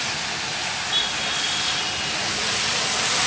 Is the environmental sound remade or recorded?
recorded